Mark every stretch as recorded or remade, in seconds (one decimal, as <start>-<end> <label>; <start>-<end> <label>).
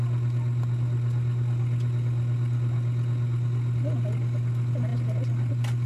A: 0.0-5.9 recorded